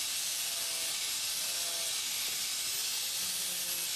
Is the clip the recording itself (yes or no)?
yes